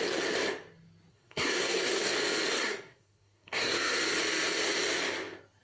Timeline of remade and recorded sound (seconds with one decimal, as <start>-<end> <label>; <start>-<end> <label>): 0.0-1.1 recorded; 1.1-2.1 remade; 2.1-2.5 recorded; 2.5-4.0 remade; 4.0-5.6 recorded